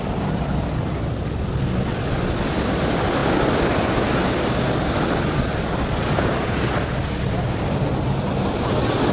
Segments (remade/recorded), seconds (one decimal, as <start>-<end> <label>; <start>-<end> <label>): 0.0-9.1 recorded